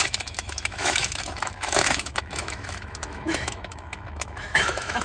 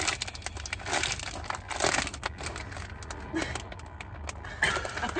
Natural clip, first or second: second